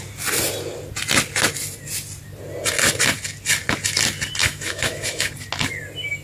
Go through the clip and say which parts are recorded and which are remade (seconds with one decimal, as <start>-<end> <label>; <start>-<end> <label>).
0.0-4.4 recorded; 4.4-5.3 remade; 5.3-6.2 recorded